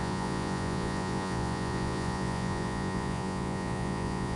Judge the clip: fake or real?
fake